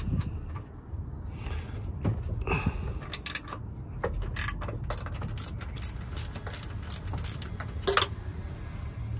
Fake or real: real